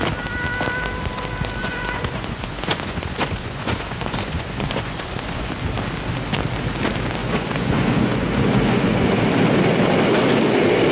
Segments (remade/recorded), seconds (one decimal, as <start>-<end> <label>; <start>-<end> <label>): 0.0-1.6 recorded; 1.6-5.5 remade; 5.5-7.2 recorded; 7.2-9.1 remade; 9.1-10.9 recorded